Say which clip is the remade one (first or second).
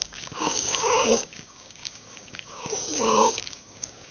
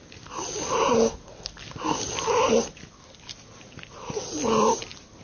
first